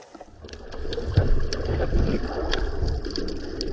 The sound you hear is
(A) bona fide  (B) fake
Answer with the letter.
A